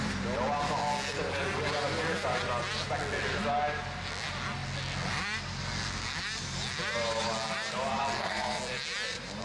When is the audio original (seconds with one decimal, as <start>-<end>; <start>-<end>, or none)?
0.0-8.1; 8.6-9.4